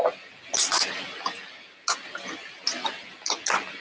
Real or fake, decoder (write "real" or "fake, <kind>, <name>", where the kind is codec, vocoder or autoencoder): real